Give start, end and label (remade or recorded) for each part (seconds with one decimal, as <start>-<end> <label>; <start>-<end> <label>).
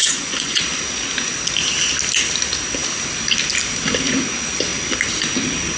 0.0-0.6 remade; 0.6-5.8 recorded